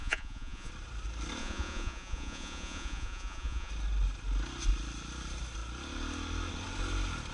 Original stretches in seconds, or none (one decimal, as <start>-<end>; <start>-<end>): 0.7-1.4; 3.7-7.3